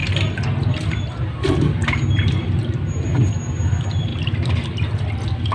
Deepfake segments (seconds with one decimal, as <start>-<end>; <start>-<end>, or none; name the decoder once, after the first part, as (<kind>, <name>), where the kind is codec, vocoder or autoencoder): none